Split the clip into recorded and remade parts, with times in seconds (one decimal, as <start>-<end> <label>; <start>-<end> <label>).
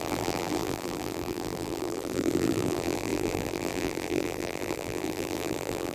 0.0-5.9 remade